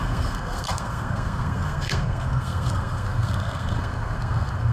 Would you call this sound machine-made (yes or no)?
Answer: yes